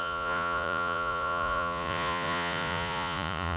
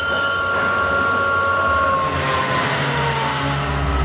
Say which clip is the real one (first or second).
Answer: second